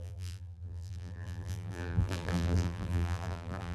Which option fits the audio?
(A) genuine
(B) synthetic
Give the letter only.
B